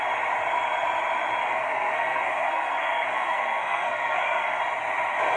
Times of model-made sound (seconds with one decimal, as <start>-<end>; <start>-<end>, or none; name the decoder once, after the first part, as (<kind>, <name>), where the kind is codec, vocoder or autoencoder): 1.4-4.6 (codec, SNAC)